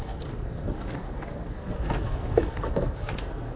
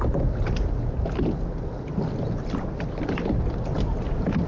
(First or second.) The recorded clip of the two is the second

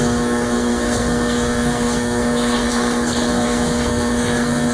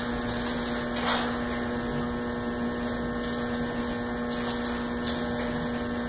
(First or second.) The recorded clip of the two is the second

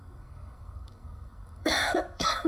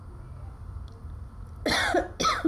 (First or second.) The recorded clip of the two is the second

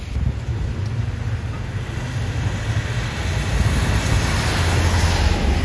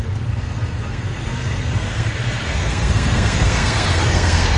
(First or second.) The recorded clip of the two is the first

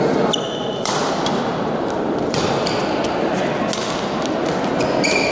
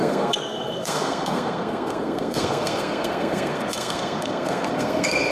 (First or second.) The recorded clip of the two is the first